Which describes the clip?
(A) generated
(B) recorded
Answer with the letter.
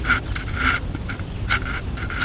B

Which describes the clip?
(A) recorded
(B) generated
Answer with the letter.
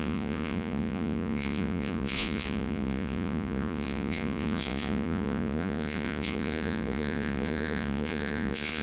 B